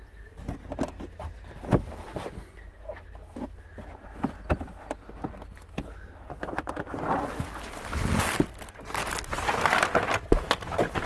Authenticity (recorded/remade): recorded